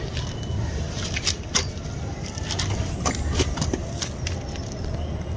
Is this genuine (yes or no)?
no